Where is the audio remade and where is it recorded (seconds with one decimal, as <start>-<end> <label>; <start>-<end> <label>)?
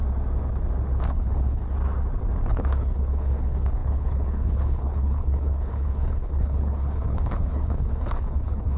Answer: 0.0-1.0 recorded; 1.0-1.6 remade; 1.6-2.5 recorded; 2.5-8.8 remade